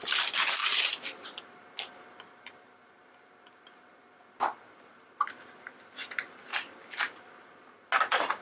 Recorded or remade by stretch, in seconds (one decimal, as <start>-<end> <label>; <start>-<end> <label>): 0.0-8.4 recorded